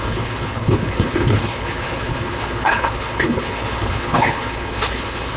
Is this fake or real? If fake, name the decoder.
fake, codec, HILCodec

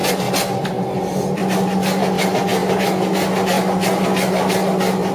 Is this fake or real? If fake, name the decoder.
real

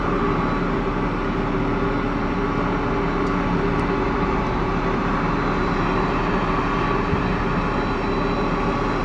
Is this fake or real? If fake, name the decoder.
real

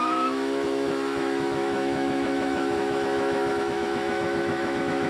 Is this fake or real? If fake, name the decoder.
fake, autoencoder, DAC-VAE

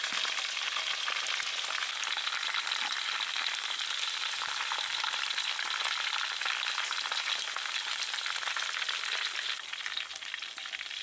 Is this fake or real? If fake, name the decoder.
real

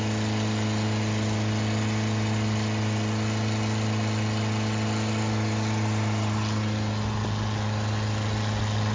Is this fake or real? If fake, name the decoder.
real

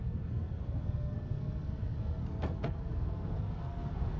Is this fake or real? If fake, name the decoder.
fake, codec, SNAC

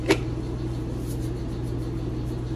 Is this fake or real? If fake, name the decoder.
real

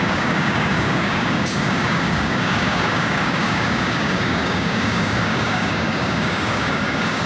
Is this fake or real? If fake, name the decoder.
fake, codec, DAC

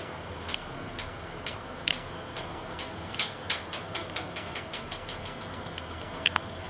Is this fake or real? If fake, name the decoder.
fake, codec, SNAC